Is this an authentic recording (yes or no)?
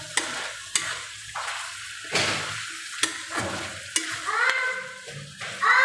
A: yes